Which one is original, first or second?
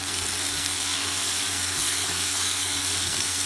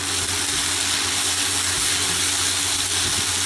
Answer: second